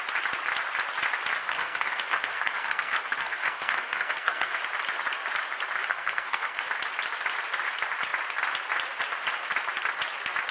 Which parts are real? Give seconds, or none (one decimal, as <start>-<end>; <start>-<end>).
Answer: 0.0-1.4; 4.6-5.9; 6.6-10.5